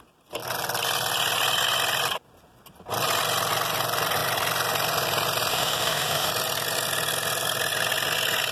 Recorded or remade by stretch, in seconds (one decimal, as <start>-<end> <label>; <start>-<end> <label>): 0.0-5.5 recorded; 5.5-6.3 remade; 6.3-8.5 recorded